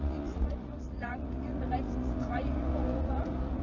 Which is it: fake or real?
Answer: fake